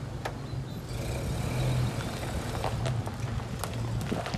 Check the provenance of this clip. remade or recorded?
recorded